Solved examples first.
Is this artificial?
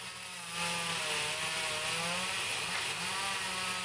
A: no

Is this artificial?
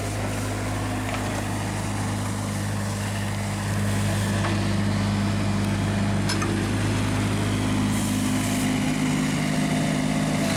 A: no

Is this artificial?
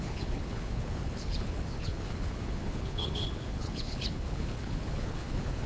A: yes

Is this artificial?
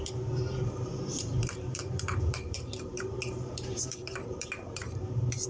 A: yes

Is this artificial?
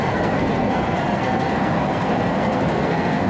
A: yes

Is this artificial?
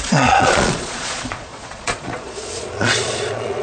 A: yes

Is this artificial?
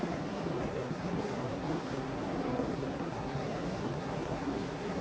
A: yes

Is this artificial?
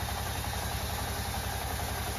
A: no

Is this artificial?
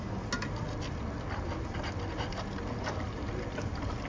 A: no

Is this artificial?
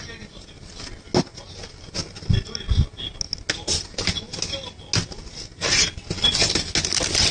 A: no